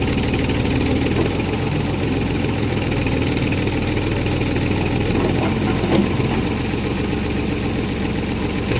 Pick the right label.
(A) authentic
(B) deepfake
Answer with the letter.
A